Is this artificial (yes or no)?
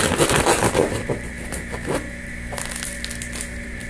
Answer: no